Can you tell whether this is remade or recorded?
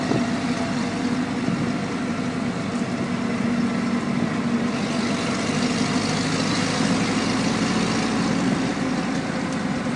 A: recorded